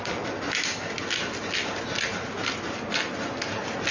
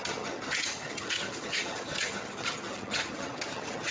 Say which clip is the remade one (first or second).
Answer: second